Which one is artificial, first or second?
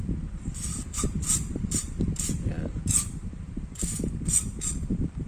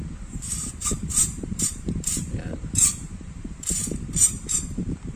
second